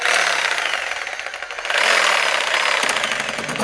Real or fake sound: real